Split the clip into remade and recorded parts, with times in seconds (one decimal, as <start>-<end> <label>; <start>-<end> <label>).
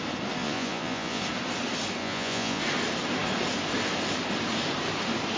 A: 0.0-0.4 recorded; 0.4-1.2 remade; 1.2-2.0 recorded; 2.0-2.6 remade; 2.6-5.4 recorded